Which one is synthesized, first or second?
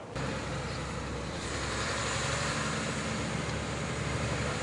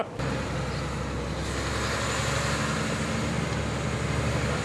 first